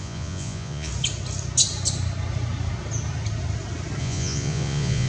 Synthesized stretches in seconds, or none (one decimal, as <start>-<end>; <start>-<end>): 0.0-0.9; 4.0-5.1